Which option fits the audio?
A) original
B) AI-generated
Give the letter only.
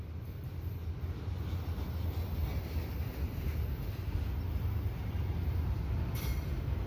A